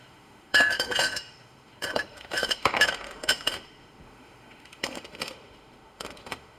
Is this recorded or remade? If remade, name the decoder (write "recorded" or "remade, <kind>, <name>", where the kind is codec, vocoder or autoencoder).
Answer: remade, autoencoder, DAC-VAE